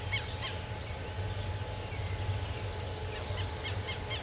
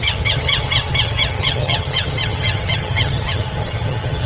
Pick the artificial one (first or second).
second